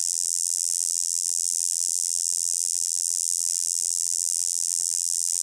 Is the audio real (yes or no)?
no